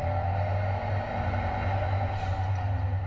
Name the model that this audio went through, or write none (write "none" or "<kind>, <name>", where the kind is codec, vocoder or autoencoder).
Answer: none